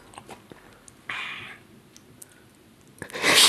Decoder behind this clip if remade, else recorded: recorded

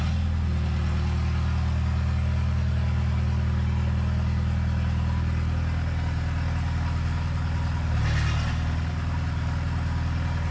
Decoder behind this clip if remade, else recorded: recorded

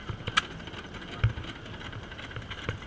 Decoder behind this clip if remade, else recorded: recorded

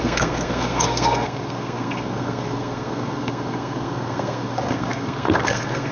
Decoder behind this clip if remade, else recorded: remade, codec, SNAC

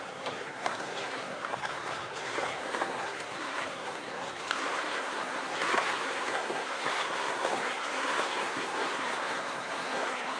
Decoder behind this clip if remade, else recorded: remade, codec, SNAC